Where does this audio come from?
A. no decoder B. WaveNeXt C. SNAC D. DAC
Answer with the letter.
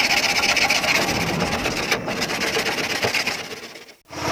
A